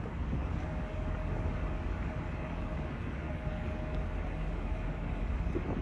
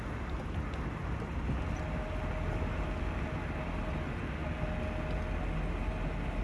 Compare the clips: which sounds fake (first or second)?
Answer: first